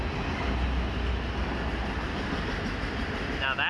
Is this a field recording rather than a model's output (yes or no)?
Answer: yes